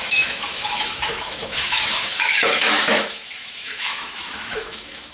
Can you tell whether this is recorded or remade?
remade